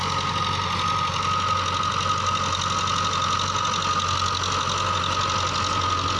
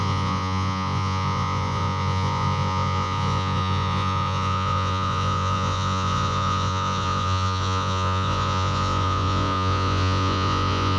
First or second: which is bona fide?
first